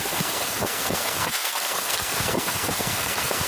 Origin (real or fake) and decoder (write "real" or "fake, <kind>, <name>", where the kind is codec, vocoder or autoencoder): fake, codec, SNAC